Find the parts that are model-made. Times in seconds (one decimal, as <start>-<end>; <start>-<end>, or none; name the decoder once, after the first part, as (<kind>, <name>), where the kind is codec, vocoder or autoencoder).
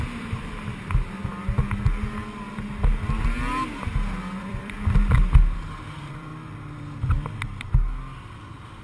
0.0-1.2 (vocoder, BigVGAN v2); 4.4-6.3; 7.6-8.8